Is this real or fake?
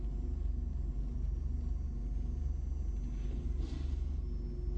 real